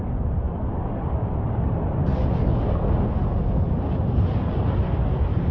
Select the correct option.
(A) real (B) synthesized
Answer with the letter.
A